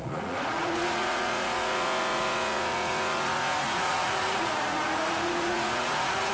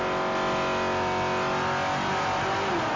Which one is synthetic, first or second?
first